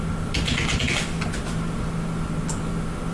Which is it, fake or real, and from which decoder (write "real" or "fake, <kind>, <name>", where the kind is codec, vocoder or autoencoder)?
real